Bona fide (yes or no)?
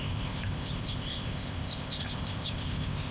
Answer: no